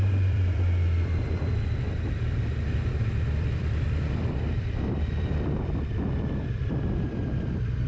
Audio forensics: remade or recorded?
remade